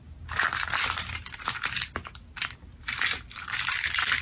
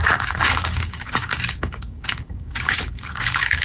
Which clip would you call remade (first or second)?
second